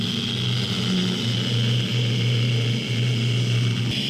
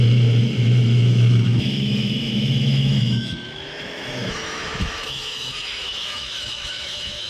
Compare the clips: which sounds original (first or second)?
first